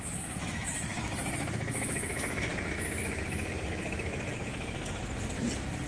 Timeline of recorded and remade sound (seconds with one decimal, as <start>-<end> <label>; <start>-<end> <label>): 0.0-5.0 remade; 5.0-5.9 recorded